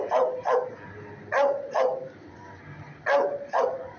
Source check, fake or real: real